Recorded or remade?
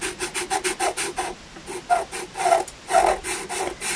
recorded